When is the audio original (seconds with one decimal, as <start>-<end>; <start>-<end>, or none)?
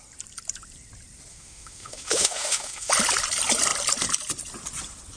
0.0-1.3; 2.9-5.2